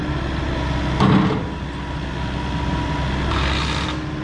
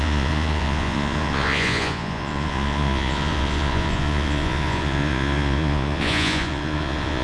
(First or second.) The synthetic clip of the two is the second